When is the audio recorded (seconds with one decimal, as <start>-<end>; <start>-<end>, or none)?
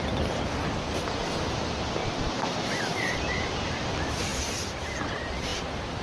0.0-2.0; 3.2-6.0